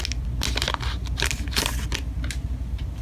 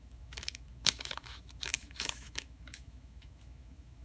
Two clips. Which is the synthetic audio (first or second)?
second